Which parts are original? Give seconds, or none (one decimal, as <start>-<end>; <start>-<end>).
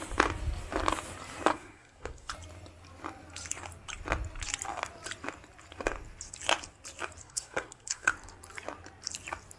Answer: 0.0-1.5; 2.3-7.2; 8.1-9.6